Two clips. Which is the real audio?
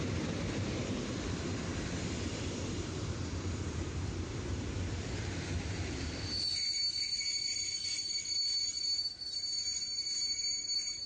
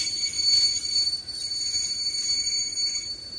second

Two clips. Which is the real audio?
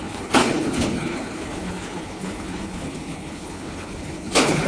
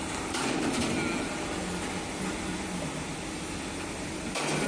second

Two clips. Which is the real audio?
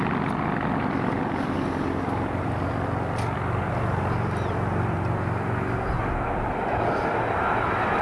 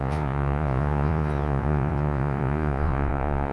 first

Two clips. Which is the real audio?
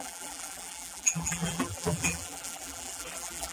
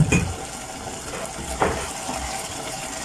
second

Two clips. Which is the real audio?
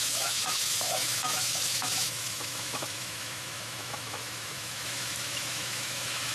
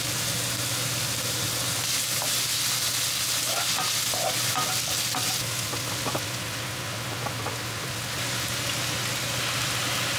second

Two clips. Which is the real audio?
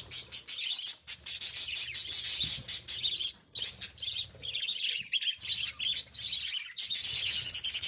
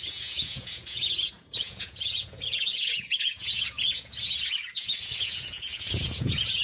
first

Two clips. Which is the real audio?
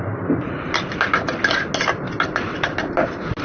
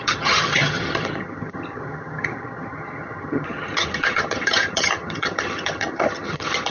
first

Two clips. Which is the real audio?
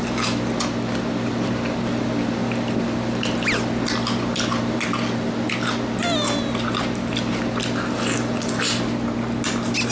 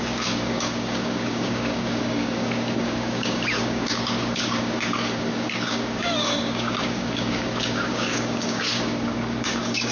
first